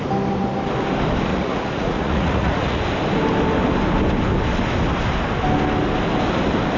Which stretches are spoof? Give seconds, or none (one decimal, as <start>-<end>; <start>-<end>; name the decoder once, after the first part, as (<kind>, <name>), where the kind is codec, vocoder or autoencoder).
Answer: 1.3-2.8 (vocoder, Vocos)